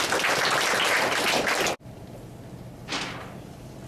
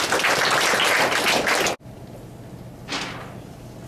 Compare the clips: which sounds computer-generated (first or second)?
first